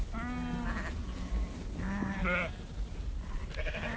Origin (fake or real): real